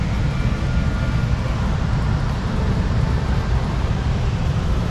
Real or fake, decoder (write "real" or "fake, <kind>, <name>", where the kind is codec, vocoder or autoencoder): real